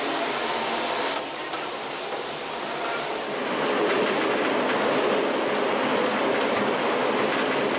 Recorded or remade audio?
remade